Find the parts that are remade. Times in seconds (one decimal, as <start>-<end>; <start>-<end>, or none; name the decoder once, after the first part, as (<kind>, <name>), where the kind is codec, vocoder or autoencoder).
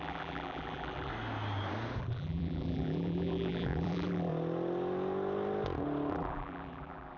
0.0-1.1 (vocoder, BigVGAN v2); 2.0-4.3; 6.1-7.2